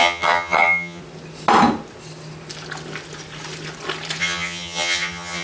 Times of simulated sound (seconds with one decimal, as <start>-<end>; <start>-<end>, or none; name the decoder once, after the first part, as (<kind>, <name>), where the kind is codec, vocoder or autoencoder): 0.0-1.0 (vocoder, HiFi-GAN); 4.2-5.4

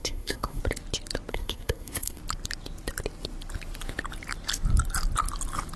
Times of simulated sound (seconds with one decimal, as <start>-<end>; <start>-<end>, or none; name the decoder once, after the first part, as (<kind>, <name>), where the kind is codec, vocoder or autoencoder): 0.0-0.6 (codec, SNAC); 1.3-2.2

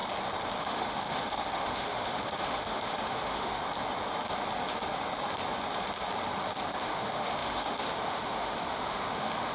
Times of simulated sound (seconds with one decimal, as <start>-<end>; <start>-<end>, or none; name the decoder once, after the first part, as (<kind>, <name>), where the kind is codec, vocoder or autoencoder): 0.6-3.6 (autoencoder, DAC-VAE); 6.8-9.5

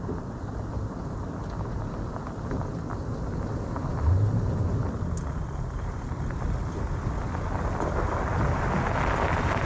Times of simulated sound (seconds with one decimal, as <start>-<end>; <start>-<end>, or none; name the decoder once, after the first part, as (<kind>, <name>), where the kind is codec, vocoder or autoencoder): none

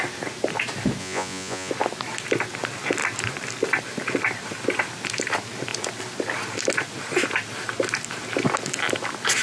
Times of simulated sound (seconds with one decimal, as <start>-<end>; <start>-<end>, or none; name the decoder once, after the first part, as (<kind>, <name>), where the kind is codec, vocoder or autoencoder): 1.0-1.7 (vocoder, Vocos)

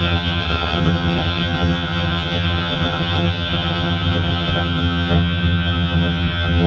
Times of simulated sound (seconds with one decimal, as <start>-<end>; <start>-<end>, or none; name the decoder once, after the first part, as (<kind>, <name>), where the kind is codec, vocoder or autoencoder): 0.0-6.7 (vocoder, HiFi-GAN)

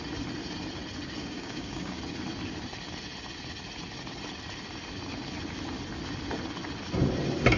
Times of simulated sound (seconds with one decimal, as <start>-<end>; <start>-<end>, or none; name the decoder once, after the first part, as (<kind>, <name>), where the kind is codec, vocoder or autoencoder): 1.2-2.0 (codec, DAC)

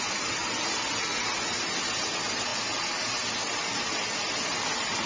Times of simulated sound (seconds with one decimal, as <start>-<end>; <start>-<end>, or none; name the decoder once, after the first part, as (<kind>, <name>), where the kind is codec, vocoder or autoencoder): none